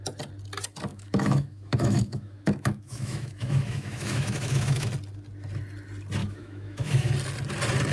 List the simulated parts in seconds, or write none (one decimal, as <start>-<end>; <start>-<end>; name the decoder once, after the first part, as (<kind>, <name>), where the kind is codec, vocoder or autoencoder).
0.9-4.9 (autoencoder, DAC-VAE); 6.2-7.1